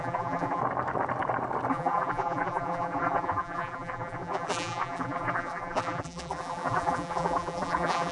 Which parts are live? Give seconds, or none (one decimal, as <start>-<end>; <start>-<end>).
0.6-1.7